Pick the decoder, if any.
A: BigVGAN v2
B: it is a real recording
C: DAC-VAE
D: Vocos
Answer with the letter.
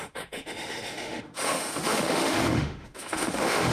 C